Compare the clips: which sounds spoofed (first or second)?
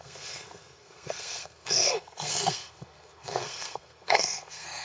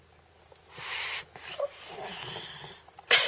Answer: first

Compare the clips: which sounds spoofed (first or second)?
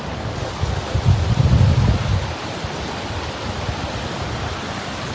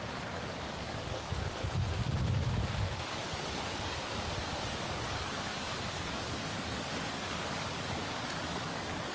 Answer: second